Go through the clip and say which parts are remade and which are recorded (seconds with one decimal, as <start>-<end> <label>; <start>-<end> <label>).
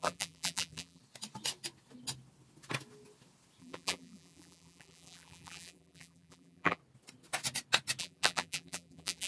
0.0-1.0 remade; 1.0-3.6 recorded; 3.6-6.8 remade; 6.8-8.0 recorded; 8.0-9.3 remade